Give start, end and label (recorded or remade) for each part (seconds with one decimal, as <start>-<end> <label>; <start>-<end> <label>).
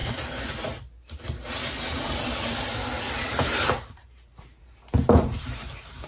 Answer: 0.0-0.8 remade; 0.8-3.3 recorded; 3.3-6.1 remade